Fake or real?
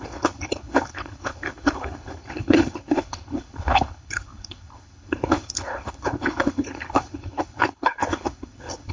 fake